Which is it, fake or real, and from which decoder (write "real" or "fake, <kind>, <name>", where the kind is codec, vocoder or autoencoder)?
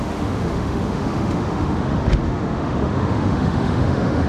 fake, autoencoder, DAC-VAE